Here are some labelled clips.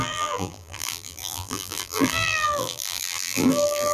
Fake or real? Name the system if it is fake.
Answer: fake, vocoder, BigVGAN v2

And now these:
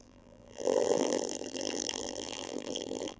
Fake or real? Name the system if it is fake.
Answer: fake, vocoder, BigVGAN v2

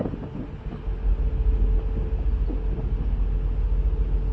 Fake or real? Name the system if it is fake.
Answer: real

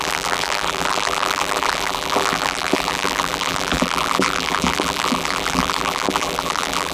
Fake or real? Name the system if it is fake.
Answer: fake, vocoder, BigVGAN v2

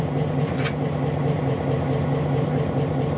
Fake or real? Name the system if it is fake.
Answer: fake, vocoder, BigVGAN v2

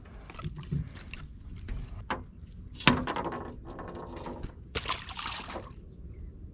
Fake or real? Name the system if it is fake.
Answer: real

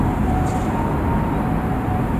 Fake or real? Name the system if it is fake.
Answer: real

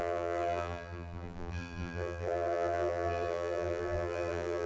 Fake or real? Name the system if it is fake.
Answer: fake, vocoder, BigVGAN v2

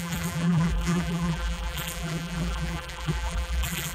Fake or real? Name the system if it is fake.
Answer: fake, vocoder, BigVGAN v2